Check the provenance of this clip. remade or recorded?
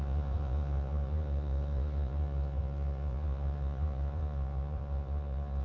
remade